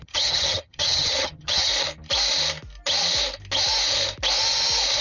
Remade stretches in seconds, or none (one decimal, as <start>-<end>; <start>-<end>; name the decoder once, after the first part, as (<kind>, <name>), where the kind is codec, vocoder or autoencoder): 0.0-1.7 (vocoder, HiFi-GAN)